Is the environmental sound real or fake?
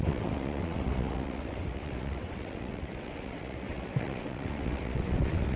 fake